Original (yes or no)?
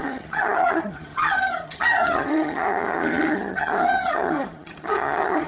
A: no